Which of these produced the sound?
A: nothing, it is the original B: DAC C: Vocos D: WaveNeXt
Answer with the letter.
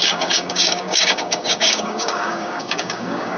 B